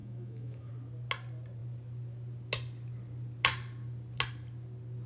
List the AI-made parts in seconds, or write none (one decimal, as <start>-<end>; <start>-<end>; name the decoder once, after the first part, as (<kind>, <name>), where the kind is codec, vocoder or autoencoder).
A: 0.0-0.7 (autoencoder, DAC-VAE)